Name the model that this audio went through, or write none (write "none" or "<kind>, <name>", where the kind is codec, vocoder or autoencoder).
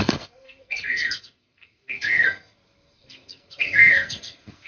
codec, SNAC